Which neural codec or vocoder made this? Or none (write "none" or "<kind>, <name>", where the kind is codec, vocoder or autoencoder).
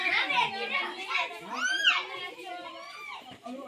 none